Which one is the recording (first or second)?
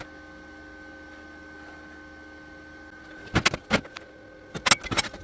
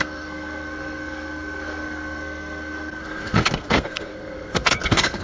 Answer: first